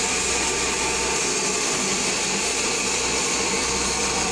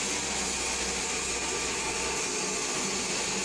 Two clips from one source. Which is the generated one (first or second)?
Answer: first